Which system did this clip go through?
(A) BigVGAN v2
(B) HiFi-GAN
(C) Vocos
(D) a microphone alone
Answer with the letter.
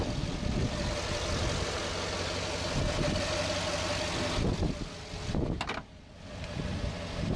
D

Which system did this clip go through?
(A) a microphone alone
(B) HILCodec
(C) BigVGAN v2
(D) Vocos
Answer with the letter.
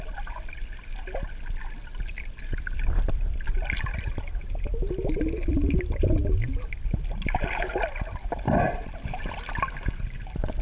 A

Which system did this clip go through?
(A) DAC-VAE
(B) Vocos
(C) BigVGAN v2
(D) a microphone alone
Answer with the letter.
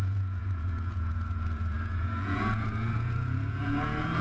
B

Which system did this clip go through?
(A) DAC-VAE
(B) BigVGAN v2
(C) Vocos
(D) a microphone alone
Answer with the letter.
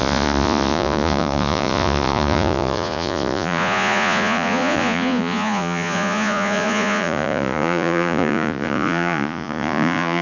C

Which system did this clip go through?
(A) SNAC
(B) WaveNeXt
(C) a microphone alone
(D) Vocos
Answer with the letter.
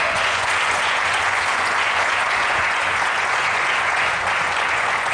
D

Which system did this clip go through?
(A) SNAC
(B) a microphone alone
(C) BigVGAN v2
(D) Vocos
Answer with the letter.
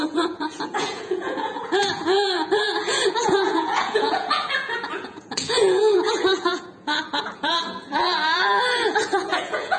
D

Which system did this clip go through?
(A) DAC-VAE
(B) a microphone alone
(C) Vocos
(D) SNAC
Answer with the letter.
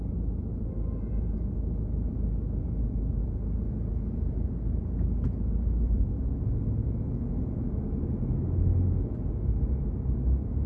B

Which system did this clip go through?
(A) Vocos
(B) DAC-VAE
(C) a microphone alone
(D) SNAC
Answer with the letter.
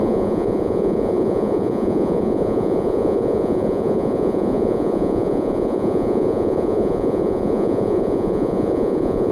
A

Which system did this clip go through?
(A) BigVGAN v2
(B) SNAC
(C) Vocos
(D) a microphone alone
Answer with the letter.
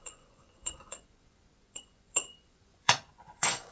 C